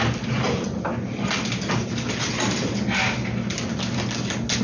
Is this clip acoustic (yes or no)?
yes